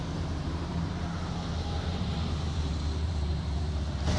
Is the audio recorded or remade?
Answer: remade